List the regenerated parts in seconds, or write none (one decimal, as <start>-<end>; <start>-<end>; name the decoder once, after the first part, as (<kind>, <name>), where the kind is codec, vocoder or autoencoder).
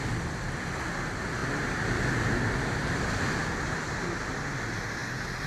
none